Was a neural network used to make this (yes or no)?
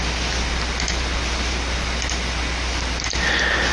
no